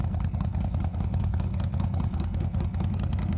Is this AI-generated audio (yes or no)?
yes